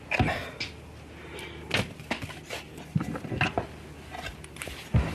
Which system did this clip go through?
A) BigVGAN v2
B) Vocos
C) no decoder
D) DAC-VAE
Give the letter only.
C